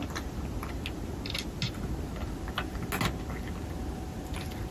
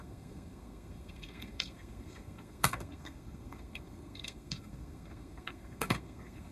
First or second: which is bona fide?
first